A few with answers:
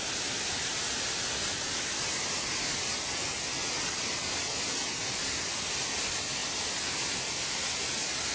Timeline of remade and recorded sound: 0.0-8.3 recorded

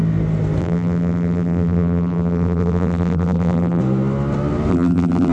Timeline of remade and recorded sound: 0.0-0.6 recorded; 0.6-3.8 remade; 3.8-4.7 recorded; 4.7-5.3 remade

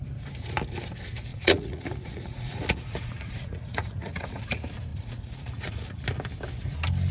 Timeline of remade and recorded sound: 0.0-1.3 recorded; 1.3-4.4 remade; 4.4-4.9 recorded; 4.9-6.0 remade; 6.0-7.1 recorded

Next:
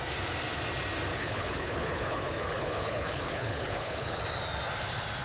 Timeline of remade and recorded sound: 0.0-1.1 recorded; 1.1-4.2 remade; 4.2-5.2 recorded